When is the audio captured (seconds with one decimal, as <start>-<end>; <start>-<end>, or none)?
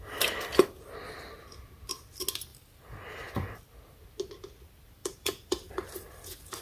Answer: 0.0-2.5; 3.3-5.0; 5.7-6.6